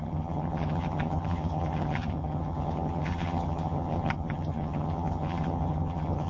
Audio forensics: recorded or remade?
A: remade